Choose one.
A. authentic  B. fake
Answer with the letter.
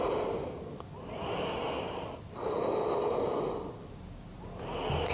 A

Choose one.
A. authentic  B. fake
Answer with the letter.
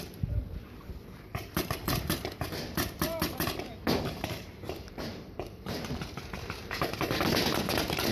B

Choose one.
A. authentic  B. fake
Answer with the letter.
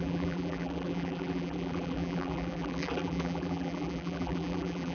B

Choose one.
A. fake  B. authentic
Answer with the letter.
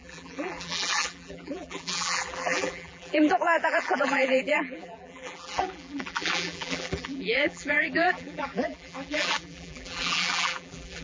A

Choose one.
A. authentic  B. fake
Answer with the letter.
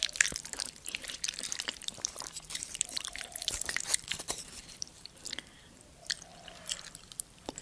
B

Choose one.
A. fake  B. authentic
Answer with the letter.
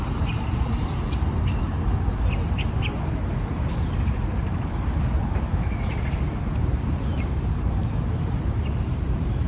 A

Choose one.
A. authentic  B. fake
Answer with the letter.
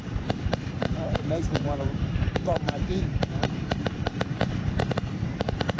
B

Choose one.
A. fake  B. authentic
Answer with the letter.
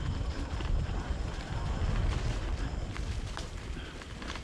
A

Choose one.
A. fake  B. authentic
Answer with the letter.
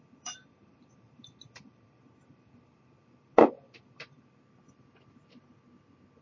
A